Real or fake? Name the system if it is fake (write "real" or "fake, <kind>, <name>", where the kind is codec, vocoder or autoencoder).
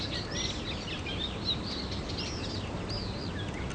real